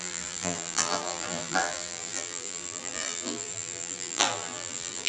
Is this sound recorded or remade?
remade